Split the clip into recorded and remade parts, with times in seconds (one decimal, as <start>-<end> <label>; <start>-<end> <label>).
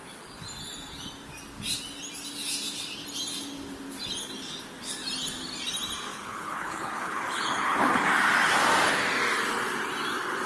0.0-6.1 recorded; 6.1-8.1 remade; 8.1-10.5 recorded